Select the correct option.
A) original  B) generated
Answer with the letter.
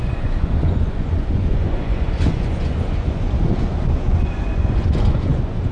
B